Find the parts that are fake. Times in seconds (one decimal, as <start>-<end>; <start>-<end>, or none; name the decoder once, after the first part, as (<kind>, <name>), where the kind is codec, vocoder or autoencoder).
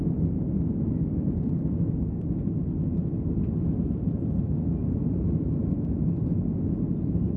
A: none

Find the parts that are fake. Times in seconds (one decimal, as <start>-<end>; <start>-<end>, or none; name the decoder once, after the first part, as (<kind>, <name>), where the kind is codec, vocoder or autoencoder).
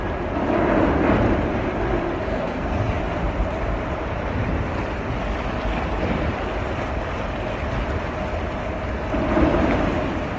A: 2.3-3.0 (codec, SNAC)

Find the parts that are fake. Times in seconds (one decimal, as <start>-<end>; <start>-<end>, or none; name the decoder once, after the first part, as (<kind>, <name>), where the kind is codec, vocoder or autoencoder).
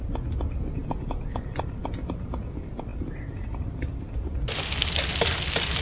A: none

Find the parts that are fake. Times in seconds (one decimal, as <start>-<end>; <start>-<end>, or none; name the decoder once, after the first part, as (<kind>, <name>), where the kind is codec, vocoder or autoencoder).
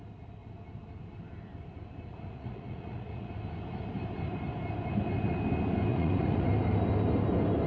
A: 2.1-3.3 (vocoder, Vocos); 5.9-6.5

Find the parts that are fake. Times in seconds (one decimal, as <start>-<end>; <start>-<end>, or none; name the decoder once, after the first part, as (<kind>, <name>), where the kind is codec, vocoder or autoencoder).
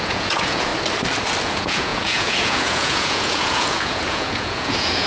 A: 0.0-0.7 (vocoder, Vocos); 1.4-5.1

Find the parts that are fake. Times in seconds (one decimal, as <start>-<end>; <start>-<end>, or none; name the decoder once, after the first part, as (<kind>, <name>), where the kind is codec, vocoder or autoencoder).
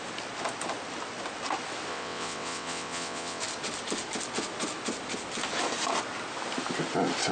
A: 1.9-3.4 (vocoder, WaveNeXt)